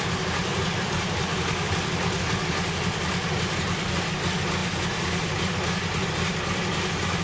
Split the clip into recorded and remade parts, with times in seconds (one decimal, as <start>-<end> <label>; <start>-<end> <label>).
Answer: 0.0-0.5 recorded; 0.5-2.6 remade; 2.6-7.2 recorded